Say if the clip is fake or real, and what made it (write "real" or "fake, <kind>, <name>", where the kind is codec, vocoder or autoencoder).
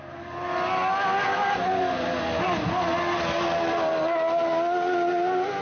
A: real